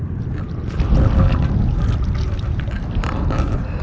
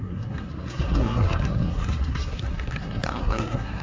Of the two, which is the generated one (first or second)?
second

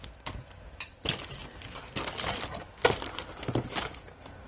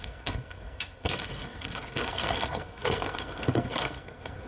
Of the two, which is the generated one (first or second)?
second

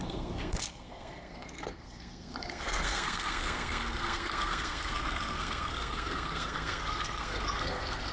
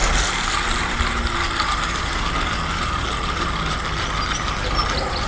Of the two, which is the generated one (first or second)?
first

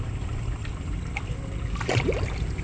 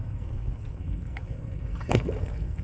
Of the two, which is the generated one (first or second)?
second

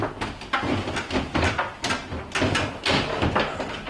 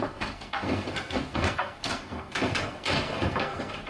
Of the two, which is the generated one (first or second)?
second